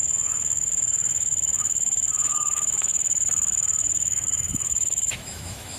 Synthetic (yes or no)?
yes